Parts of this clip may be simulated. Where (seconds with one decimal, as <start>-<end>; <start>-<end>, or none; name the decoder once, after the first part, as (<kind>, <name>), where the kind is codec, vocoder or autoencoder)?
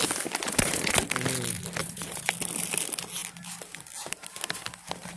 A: 0.4-1.0 (vocoder, Vocos); 1.8-2.3